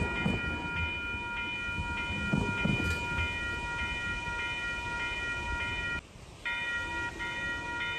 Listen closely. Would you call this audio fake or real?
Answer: real